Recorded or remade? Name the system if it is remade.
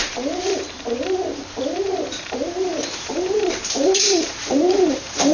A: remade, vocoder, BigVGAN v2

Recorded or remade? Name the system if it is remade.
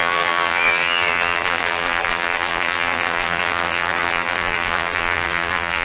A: remade, vocoder, BigVGAN v2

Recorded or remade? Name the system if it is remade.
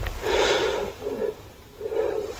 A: recorded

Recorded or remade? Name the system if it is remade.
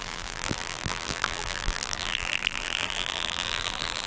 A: remade, vocoder, BigVGAN v2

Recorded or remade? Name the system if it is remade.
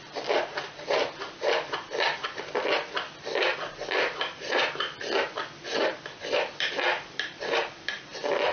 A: remade, vocoder, BigVGAN v2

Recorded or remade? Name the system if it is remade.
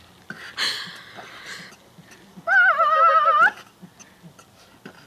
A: recorded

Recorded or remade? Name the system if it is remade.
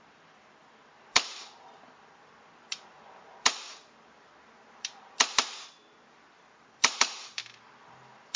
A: remade, vocoder, BigVGAN v2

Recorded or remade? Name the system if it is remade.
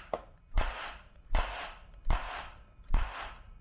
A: remade, vocoder, BigVGAN v2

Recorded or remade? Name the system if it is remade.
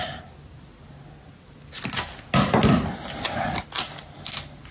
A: recorded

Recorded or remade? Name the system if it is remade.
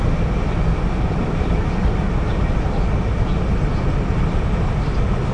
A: recorded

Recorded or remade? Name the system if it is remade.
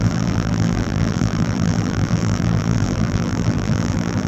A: remade, vocoder, BigVGAN v2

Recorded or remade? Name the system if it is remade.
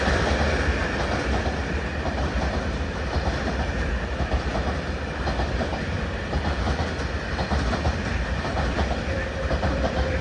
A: remade, vocoder, BigVGAN v2